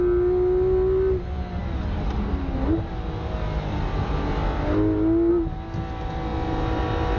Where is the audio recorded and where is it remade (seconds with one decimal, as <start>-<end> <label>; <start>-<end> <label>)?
0.0-7.2 recorded

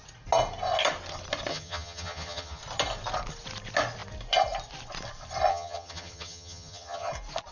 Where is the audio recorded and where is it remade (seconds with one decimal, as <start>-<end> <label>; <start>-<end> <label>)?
0.0-1.5 recorded; 1.5-2.6 remade; 2.6-5.5 recorded; 5.5-7.1 remade; 7.1-7.5 recorded

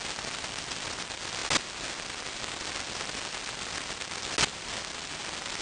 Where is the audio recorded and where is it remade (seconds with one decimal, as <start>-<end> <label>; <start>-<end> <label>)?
0.0-5.6 recorded

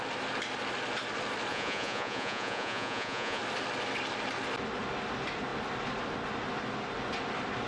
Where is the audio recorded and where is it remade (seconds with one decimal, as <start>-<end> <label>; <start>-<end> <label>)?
0.0-1.5 recorded; 1.5-3.4 remade; 3.4-7.7 recorded